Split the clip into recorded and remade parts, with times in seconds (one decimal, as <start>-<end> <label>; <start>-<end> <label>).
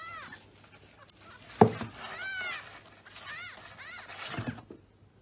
0.0-5.2 recorded